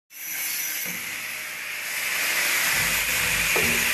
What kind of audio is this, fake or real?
real